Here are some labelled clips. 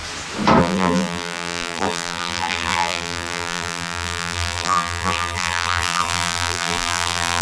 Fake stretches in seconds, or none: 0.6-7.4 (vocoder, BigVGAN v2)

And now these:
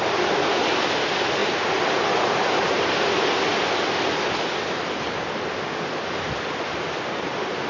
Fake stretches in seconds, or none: 1.4-3.0 (vocoder, BigVGAN v2)

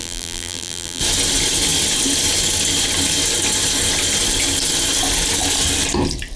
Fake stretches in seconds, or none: 0.0-1.0 (vocoder, BigVGAN v2)

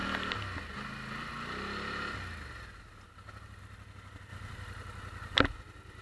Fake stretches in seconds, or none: 4.3-5.4 (vocoder, BigVGAN v2)